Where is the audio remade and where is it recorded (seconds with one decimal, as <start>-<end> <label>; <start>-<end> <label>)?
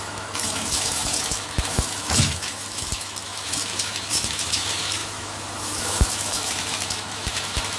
0.0-7.8 remade